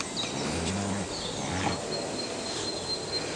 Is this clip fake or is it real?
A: real